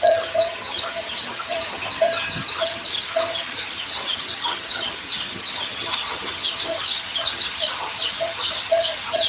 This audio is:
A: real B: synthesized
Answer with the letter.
B